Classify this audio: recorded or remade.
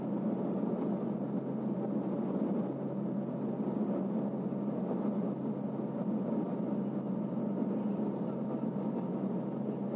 recorded